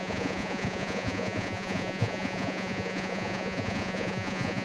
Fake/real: fake